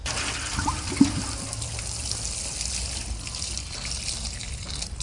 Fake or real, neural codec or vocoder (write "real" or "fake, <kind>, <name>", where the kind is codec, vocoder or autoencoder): real